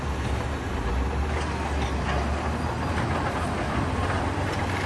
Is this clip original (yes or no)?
yes